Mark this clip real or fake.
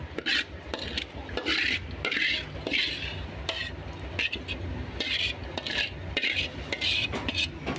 real